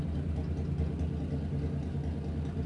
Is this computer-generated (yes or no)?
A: no